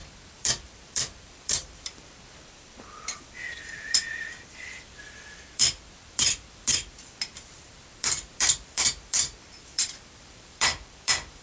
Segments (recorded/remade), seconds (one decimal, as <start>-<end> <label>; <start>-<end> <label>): 0.0-11.4 remade